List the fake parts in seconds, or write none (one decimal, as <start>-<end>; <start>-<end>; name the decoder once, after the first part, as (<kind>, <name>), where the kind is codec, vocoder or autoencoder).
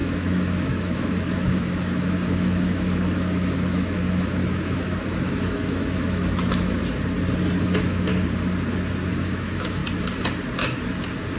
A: 0.0-6.8 (autoencoder, DAC-VAE); 7.6-8.1; 9.1-9.8